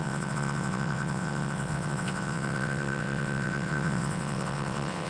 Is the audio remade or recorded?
remade